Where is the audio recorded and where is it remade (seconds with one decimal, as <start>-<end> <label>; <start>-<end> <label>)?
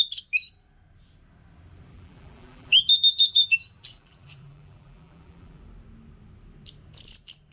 0.0-1.9 recorded; 1.9-5.6 remade; 5.6-7.5 recorded